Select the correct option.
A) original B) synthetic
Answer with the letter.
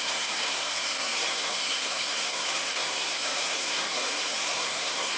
B